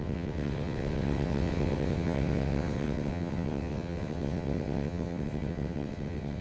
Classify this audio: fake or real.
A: fake